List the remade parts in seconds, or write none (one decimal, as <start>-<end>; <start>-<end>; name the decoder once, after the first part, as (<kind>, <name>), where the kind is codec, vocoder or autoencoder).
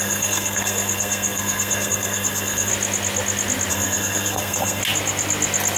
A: 0.0-2.7 (codec, SNAC); 3.7-4.8